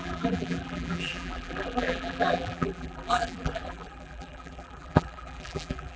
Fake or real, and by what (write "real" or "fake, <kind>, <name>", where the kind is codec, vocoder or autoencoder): fake, vocoder, BigVGAN v2